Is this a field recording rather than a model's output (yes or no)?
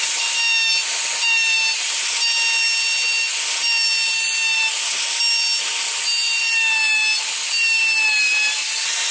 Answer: yes